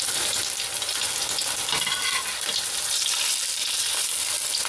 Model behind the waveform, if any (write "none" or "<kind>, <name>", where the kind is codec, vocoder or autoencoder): none